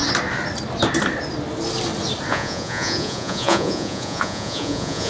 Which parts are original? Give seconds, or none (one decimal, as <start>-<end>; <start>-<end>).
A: 0.0-2.3